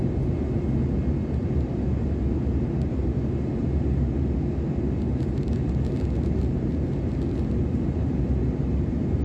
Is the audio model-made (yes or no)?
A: no